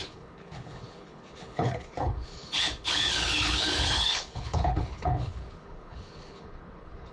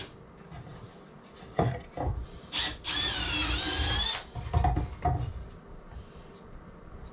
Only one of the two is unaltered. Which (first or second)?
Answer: second